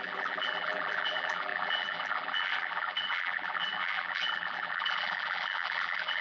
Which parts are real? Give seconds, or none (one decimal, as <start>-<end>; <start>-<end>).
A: none

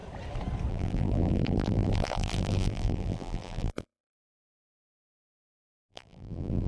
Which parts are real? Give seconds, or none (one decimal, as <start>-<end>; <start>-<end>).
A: 0.0-0.7